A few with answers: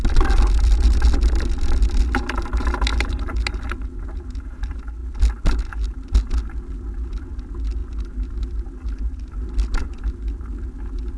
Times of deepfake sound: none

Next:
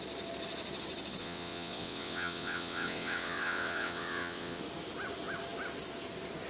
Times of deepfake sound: 1.2-4.6 (vocoder, WaveNeXt)

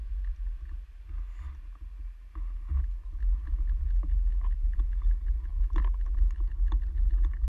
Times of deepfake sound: none

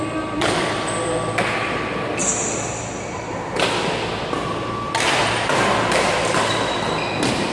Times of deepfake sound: none

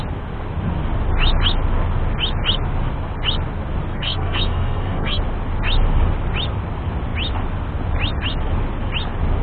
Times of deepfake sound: 3.9-5.2 (codec, SNAC)